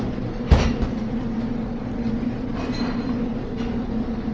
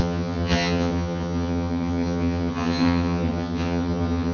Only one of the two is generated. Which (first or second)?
second